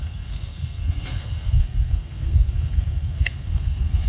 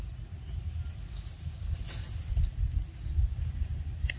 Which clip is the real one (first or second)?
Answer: second